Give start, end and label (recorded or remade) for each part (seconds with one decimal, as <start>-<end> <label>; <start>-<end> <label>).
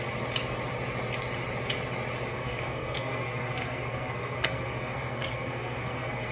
0.0-2.3 recorded; 2.3-6.3 remade